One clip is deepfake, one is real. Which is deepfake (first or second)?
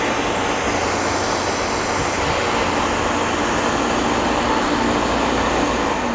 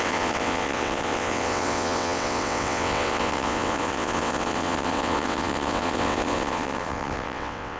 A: second